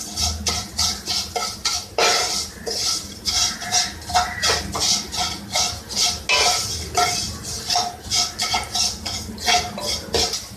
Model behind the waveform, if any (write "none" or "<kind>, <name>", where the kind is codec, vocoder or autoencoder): none